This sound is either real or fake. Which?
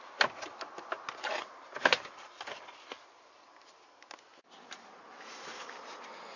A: real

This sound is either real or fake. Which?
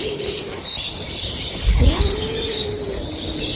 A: fake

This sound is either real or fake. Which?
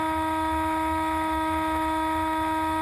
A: fake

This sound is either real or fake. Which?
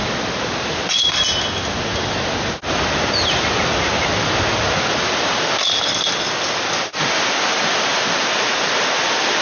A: real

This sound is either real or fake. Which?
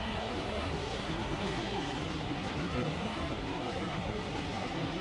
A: fake